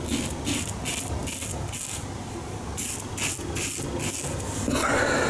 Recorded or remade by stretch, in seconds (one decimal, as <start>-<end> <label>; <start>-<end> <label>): 0.0-5.3 recorded